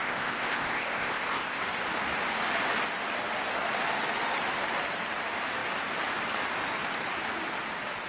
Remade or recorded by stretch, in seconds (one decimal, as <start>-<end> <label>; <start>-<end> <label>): 0.0-1.6 remade; 1.6-8.1 recorded